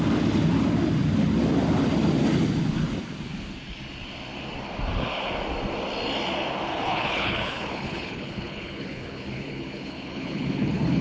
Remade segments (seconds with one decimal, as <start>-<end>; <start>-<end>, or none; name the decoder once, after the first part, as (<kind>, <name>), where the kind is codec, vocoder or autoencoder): 6.7-11.0 (codec, HILCodec)